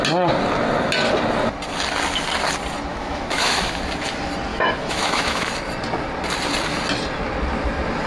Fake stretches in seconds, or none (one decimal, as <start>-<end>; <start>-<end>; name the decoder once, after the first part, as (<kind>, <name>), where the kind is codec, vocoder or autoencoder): 2.9-3.8 (autoencoder, DAC-VAE); 4.5-5.5